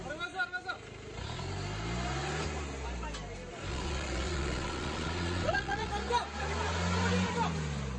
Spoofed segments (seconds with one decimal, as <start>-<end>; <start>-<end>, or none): 3.7-5.9